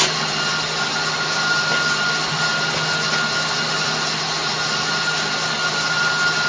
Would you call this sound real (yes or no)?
yes